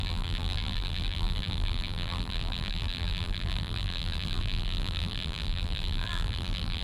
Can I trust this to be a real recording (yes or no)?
no